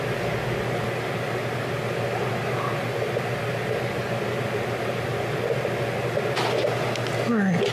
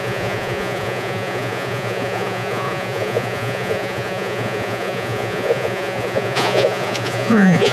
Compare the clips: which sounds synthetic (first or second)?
second